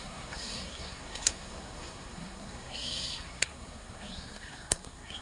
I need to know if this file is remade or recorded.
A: remade